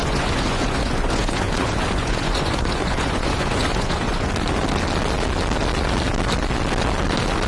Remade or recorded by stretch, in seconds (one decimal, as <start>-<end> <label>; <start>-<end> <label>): 0.0-4.3 remade; 4.3-7.5 recorded